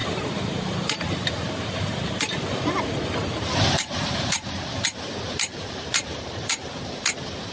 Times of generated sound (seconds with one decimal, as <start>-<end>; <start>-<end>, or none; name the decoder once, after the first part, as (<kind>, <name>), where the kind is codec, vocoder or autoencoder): 0.0-7.5 (vocoder, BigVGAN v2)